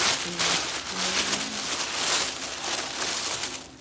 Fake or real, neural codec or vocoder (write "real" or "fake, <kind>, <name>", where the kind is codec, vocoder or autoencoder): real